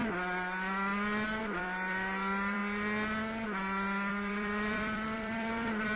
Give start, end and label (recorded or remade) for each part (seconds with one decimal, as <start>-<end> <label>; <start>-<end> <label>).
0.0-1.4 recorded; 1.4-2.6 remade; 2.6-4.1 recorded; 4.1-6.0 remade